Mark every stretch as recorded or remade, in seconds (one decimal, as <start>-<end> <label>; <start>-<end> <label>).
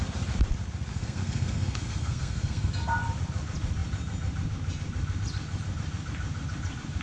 0.0-0.9 recorded; 0.9-2.7 remade; 2.7-7.0 recorded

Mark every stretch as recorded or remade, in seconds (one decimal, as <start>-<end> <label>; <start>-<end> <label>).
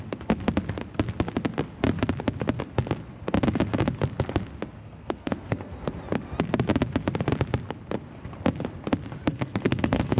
0.0-4.8 recorded; 4.8-5.8 remade; 5.8-9.3 recorded; 9.3-10.2 remade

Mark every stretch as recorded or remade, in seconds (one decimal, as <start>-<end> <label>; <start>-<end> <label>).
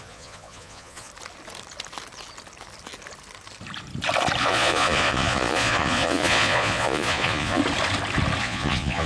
0.0-1.1 remade; 1.1-4.4 recorded; 4.4-7.6 remade; 7.6-8.4 recorded; 8.4-9.1 remade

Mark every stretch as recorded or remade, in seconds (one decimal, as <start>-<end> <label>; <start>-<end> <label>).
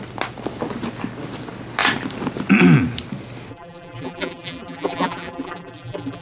0.0-3.5 recorded; 3.5-6.2 remade